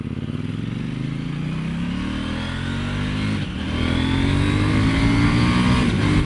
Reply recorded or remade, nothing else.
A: recorded